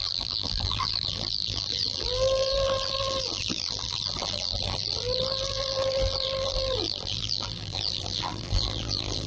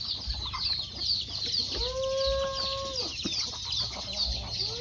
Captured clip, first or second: second